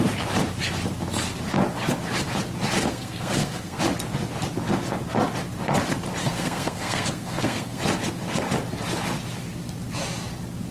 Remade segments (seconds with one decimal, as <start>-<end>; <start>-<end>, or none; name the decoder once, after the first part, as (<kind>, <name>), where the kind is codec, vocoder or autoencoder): 2.8-3.8 (codec, SNAC); 6.2-7.8